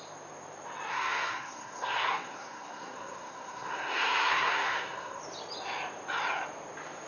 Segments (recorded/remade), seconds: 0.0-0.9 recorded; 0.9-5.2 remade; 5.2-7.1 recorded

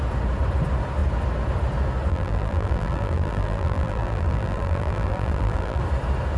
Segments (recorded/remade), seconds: 0.0-2.1 recorded; 2.1-5.8 remade; 5.8-6.4 recorded

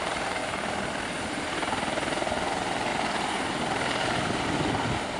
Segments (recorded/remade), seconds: 0.0-5.2 recorded

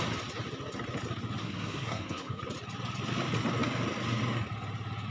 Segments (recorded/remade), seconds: 0.0-1.4 recorded; 1.4-2.4 remade; 2.4-5.1 recorded

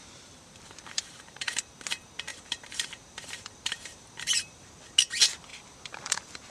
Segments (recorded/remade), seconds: 0.0-1.7 remade; 1.7-2.3 recorded; 2.3-4.7 remade; 4.7-5.5 recorded; 5.5-6.5 remade